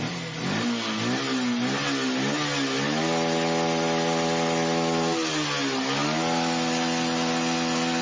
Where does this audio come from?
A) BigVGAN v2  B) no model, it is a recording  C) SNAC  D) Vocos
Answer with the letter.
B